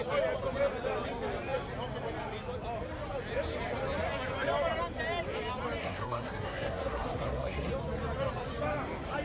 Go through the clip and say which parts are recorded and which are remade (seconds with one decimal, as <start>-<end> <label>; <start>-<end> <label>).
0.0-5.8 recorded; 5.8-7.7 remade; 7.7-9.2 recorded